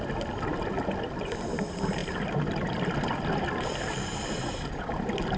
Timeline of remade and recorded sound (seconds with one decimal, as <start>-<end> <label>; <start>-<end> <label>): 0.0-5.4 recorded

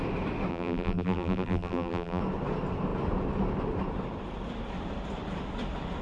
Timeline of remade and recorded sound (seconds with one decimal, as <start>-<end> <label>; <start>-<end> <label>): 0.0-0.5 recorded; 0.5-2.2 remade; 2.2-6.0 recorded

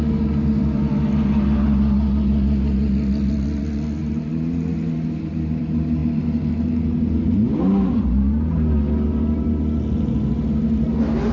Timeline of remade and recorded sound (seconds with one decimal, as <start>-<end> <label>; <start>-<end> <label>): 0.0-11.3 recorded